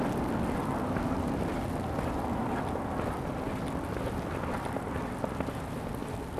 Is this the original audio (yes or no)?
yes